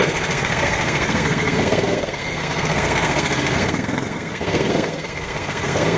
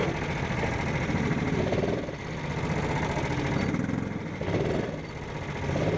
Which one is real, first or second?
second